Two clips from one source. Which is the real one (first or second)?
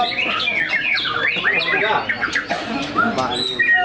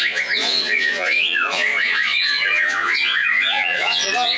first